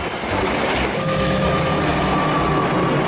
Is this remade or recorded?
recorded